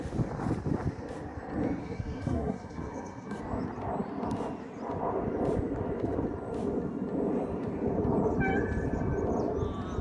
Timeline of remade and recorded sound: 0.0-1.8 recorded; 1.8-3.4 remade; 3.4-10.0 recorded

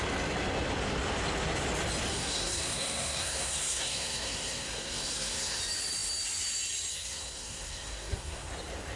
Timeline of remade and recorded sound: 0.0-2.1 recorded; 2.1-5.6 remade; 5.6-6.9 recorded; 6.9-8.5 remade; 8.5-9.0 recorded

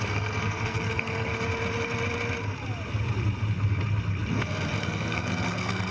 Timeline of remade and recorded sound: 0.0-1.3 remade; 1.3-4.8 recorded; 4.8-5.9 remade

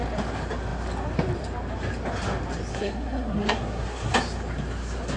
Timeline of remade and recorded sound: 0.0-2.7 recorded; 2.7-4.1 remade; 4.1-5.2 recorded